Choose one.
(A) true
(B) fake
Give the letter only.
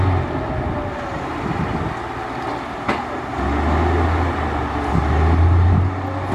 A